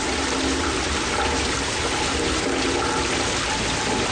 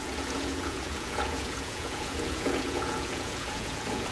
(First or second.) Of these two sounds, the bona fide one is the first